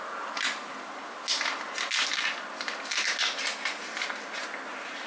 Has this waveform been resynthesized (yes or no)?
no